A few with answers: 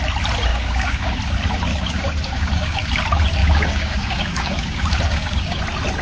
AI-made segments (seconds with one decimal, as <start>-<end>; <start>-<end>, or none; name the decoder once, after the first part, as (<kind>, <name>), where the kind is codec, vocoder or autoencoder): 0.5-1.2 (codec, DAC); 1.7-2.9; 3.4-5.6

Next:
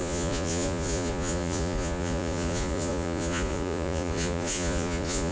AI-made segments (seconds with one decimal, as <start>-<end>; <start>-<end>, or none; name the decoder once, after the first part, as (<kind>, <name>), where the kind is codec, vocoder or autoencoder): 0.0-5.3 (vocoder, Vocos)

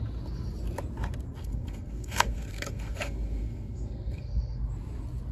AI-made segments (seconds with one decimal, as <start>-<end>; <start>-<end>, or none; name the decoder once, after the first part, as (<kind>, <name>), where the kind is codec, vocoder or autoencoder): 1.4-4.6 (codec, SNAC)

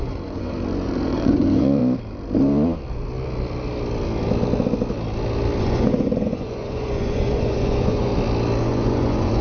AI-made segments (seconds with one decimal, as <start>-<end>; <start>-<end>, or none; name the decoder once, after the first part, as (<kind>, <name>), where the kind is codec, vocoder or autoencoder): 0.0-1.8 (vocoder, Vocos); 5.6-8.1; 8.6-9.4

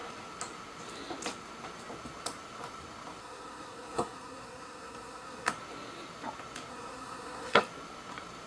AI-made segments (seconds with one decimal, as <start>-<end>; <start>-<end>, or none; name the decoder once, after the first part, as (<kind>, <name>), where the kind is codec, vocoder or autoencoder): 3.2-5.5 (codec, SNAC); 6.7-7.6

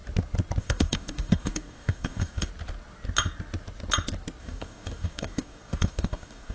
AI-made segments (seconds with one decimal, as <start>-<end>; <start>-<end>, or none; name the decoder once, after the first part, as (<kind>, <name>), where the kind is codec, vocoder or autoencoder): 0.6-2.5 (codec, DAC); 4.4-6.5